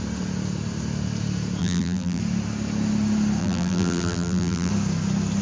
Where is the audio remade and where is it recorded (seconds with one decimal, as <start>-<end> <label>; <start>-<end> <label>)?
0.0-1.6 recorded; 1.6-2.2 remade; 2.2-3.4 recorded; 3.4-4.7 remade; 4.7-5.4 recorded

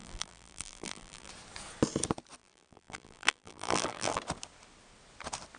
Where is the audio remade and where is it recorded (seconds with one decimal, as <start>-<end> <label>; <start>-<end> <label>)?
0.0-1.3 remade; 1.3-2.4 recorded; 2.4-4.2 remade; 4.2-5.6 recorded

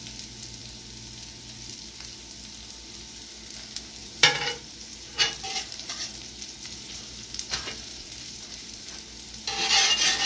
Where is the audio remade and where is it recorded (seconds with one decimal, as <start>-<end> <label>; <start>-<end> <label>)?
0.0-4.0 recorded; 4.0-9.0 remade; 9.0-10.3 recorded

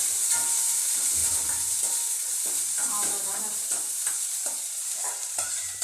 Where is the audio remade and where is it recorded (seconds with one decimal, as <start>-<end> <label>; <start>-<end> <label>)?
0.0-4.0 remade; 4.0-4.8 recorded; 4.8-5.8 remade